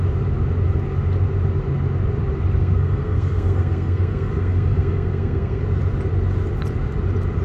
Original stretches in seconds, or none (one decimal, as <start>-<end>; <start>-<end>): 0.0-2.6; 5.6-7.4